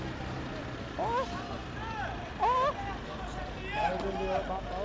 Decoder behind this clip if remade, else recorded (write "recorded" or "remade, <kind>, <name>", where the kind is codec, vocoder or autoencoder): recorded